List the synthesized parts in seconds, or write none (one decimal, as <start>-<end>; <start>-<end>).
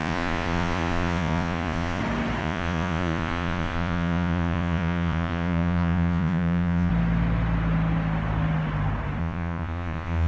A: 0.0-2.0; 2.4-6.9; 9.2-10.3